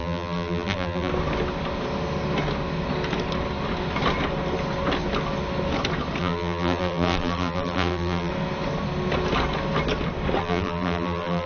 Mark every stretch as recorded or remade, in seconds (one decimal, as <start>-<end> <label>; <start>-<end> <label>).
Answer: 0.0-1.1 remade; 1.1-6.2 recorded; 6.2-8.3 remade; 8.3-10.4 recorded; 10.4-11.5 remade

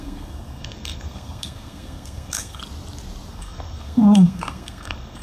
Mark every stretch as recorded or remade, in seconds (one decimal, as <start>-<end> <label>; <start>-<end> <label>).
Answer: 0.0-2.6 remade; 2.6-3.3 recorded; 3.3-5.2 remade

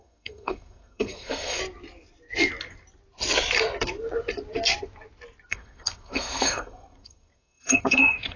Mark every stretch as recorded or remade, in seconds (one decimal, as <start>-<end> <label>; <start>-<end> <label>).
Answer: 0.0-1.6 remade; 1.6-5.5 recorded; 5.5-8.4 remade

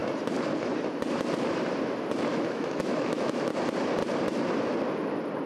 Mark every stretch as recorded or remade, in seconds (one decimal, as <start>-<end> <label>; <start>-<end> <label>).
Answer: 0.0-2.3 recorded; 2.3-3.5 remade; 3.5-5.5 recorded

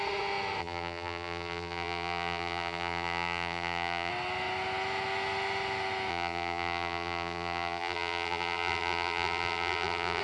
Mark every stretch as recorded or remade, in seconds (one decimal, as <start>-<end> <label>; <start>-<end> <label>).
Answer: 0.0-0.6 recorded; 0.6-4.1 remade; 4.1-6.1 recorded; 6.1-10.2 remade

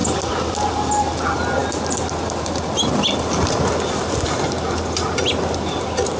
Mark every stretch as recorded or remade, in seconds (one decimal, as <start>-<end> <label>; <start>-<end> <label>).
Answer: 0.0-6.2 recorded

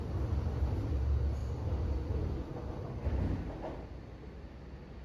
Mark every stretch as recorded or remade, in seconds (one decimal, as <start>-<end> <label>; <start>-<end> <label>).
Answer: 0.0-5.0 recorded